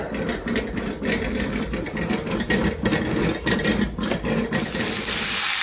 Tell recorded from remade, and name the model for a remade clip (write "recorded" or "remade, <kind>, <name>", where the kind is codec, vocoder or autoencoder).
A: recorded